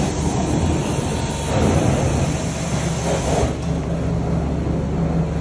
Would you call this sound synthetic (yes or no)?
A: no